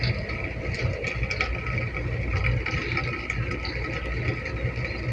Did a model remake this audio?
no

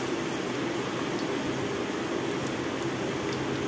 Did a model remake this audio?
no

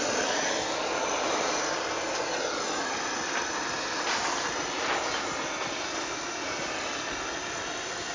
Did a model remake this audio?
no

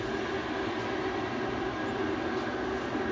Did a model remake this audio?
no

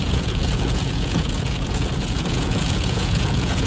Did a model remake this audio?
yes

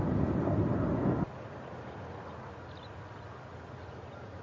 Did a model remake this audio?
no